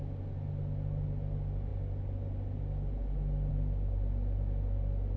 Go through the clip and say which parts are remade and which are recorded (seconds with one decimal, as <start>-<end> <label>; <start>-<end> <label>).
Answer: 0.0-5.2 recorded